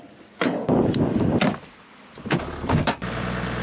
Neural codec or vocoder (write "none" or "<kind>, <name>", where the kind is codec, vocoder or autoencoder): none